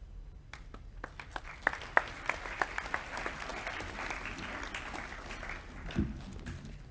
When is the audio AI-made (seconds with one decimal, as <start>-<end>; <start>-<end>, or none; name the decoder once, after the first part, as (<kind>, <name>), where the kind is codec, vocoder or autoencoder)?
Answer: none